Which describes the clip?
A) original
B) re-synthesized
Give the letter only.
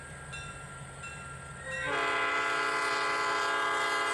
A